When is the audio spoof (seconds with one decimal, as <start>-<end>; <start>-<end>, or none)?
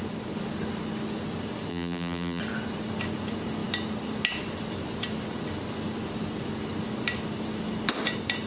1.7-2.4